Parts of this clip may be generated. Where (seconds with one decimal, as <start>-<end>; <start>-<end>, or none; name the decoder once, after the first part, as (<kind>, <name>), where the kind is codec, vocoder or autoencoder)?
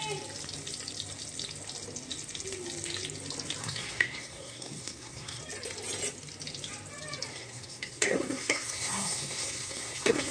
3.6-5.4 (codec, SNAC); 7.3-10.3